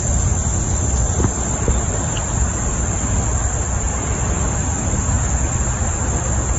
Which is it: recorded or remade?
recorded